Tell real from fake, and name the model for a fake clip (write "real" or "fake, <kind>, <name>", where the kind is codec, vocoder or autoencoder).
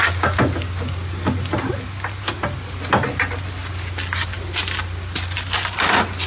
real